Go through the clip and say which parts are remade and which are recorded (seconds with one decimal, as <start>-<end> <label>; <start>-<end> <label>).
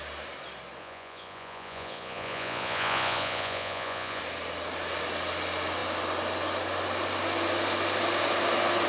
0.0-0.8 recorded; 0.8-4.2 remade; 4.2-8.9 recorded